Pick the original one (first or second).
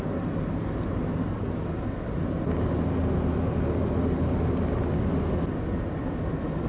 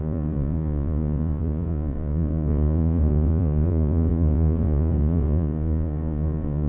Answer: first